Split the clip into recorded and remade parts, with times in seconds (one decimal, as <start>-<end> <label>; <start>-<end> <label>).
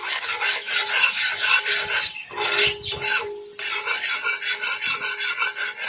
0.0-5.9 recorded